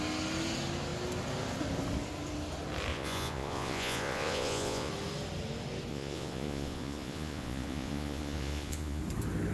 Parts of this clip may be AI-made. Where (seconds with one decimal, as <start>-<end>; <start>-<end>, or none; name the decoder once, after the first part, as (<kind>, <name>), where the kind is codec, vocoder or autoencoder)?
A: 2.9-4.9 (vocoder, Vocos); 5.9-9.0